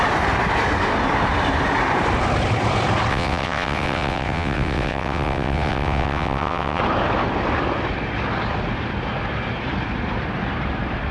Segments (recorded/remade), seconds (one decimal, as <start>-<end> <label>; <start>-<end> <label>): 0.0-3.1 recorded; 3.1-6.8 remade; 6.8-11.1 recorded